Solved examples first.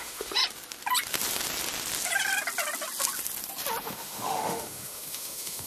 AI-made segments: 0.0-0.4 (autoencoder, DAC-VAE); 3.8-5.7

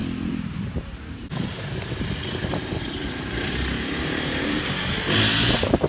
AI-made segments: 0.0-5.9 (vocoder, BigVGAN v2)

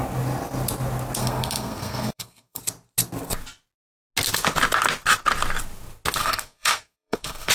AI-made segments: 1.2-2.6 (codec, SNAC); 6.2-7.5

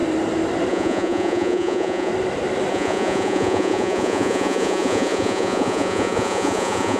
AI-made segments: 0.7-2.1 (vocoder, Vocos); 2.7-7.0

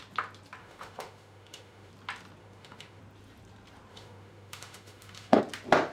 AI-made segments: 0.6-1.9 (autoencoder, DAC-VAE); 2.4-3.0; 3.9-5.4

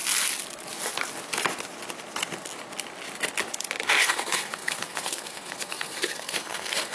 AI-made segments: 4.1-6.9 (codec, SNAC)

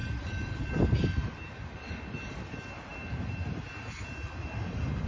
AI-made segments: 0.0-0.7 (vocoder, BigVGAN v2)

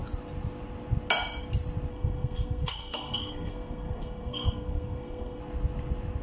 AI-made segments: 1.9-5.4 (codec, SNAC)